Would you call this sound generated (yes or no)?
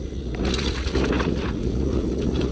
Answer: yes